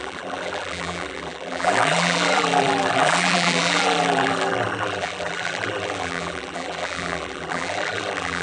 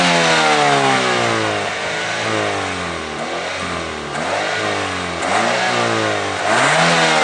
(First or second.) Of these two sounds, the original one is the second